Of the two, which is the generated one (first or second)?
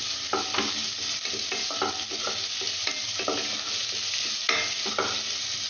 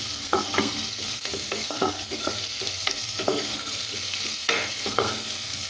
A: second